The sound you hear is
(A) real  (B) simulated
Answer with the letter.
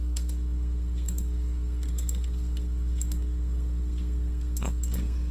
B